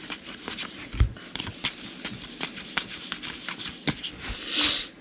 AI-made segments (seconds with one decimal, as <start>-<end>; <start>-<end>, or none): 0.0-1.5; 4.5-5.0

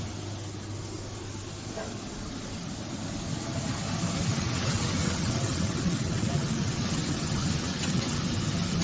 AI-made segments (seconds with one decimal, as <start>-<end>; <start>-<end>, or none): 4.3-8.2

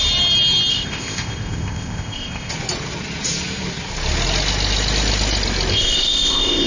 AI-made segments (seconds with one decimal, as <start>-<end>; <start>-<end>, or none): 0.7-2.5; 5.7-6.7

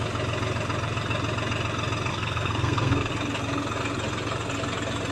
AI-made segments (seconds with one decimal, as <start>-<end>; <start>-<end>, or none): 2.1-3.1

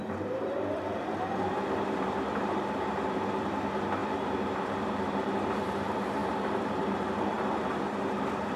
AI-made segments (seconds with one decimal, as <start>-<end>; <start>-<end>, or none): 0.0-8.6

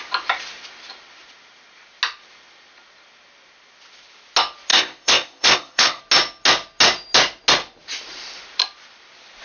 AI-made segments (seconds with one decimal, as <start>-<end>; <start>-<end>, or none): 4.7-6.0